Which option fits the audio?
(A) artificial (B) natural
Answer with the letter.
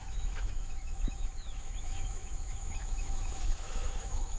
A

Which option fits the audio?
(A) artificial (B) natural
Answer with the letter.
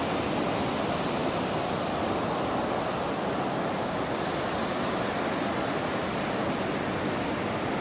B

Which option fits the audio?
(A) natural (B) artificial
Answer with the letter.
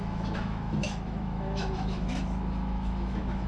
B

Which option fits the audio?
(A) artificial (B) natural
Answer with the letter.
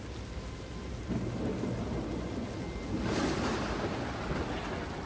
B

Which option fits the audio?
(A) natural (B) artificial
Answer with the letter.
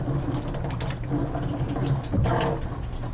A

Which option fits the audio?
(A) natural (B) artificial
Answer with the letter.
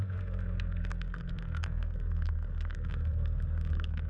B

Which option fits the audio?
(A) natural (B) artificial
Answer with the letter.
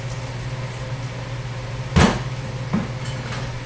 A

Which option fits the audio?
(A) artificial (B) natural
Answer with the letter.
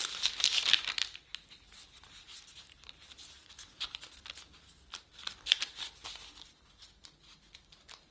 B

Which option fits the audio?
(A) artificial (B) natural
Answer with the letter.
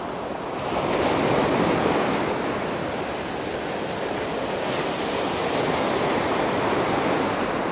B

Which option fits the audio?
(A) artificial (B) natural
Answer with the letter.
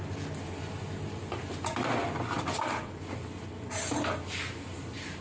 B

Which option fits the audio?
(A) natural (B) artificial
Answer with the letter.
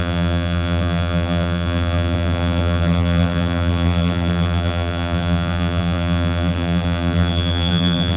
B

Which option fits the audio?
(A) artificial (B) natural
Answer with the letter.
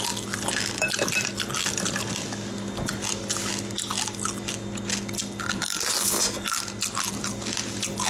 B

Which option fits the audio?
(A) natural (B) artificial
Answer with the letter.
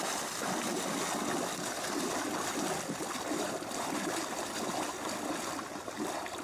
A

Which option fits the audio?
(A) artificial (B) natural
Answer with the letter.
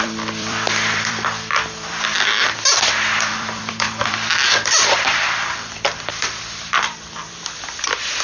A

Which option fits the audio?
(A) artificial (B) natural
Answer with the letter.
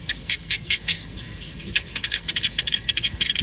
A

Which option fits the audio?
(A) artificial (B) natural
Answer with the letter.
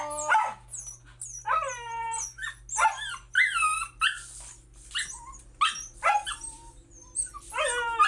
B